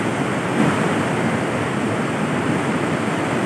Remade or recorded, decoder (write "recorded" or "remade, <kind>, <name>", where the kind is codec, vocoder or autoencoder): recorded